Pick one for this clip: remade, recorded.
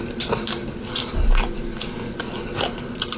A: recorded